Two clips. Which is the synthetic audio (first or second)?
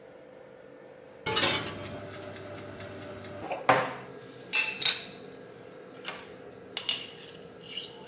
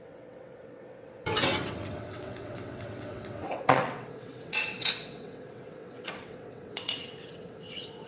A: second